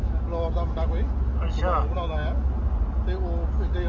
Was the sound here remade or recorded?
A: recorded